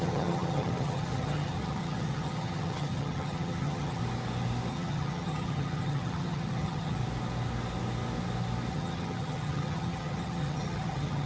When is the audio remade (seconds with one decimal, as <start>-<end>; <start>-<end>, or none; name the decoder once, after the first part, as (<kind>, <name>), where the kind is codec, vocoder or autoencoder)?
0.0-4.0 (vocoder, HiFi-GAN); 4.7-7.0; 8.7-11.3